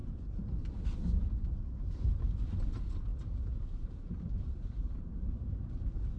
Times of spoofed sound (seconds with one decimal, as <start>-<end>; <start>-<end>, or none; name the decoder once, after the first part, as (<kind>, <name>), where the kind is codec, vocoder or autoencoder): 0.0-2.1 (vocoder, BigVGAN v2); 3.1-5.6